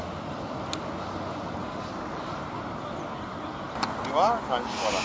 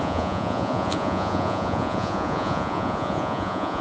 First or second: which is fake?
second